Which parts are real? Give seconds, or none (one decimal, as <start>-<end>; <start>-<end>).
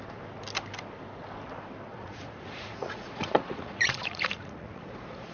0.0-1.9